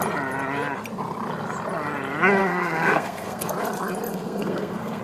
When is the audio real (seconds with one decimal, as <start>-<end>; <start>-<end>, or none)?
0.0-2.4; 3.5-4.1